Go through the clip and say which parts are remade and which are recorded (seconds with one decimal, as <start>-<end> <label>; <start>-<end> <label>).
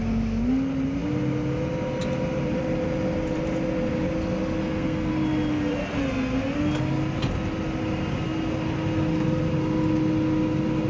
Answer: 0.0-4.6 recorded; 4.6-5.1 remade; 5.1-10.9 recorded